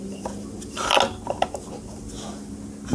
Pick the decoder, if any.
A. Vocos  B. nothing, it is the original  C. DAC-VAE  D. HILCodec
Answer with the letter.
B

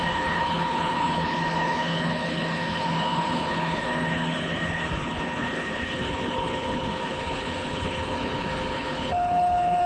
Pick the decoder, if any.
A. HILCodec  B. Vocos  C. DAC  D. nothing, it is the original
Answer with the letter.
A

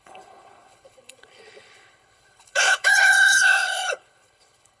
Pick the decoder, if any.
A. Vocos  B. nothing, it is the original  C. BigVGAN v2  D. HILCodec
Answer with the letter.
D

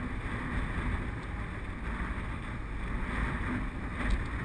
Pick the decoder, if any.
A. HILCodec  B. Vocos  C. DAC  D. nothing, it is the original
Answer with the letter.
D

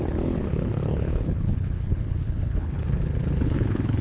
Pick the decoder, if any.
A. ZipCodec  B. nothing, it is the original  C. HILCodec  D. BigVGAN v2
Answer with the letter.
C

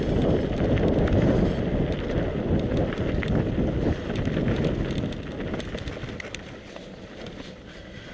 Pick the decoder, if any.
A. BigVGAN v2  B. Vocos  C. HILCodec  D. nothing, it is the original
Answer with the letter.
D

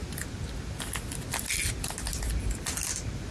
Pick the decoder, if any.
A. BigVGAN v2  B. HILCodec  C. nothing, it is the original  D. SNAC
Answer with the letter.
C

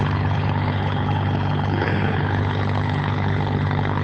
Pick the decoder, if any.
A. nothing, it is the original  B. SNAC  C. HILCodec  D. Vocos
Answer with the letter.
C